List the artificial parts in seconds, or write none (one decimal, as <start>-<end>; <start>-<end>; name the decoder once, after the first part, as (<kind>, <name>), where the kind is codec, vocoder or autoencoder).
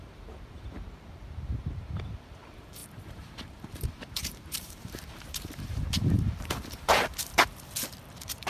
0.0-7.2 (vocoder, BigVGAN v2); 8.1-8.5